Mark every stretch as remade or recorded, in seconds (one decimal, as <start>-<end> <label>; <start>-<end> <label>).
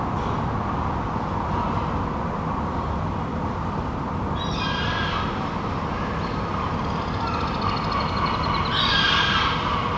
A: 0.0-10.0 recorded